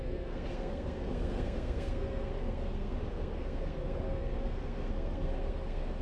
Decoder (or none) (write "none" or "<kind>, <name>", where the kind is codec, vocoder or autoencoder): codec, SNAC